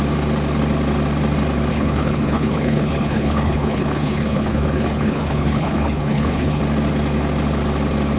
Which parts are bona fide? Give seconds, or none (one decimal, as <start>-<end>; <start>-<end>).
0.0-1.7; 6.6-8.2